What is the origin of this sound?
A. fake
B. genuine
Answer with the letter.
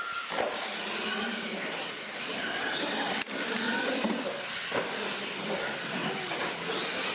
B